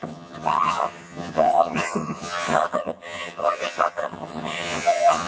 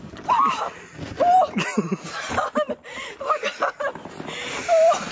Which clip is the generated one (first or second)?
first